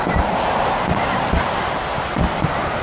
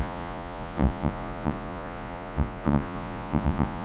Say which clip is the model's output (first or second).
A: second